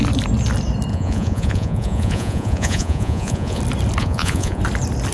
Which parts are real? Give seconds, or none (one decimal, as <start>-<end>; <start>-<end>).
0.0-0.9; 3.6-4.0; 4.6-5.1